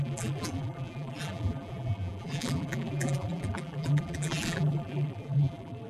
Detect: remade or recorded remade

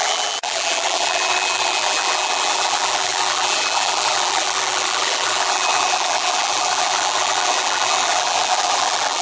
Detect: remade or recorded remade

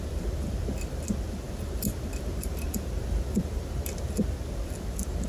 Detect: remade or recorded remade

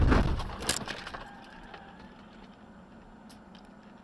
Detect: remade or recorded recorded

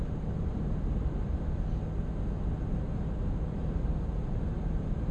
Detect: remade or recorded recorded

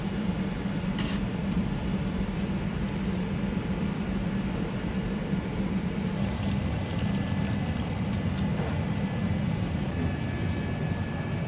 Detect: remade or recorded remade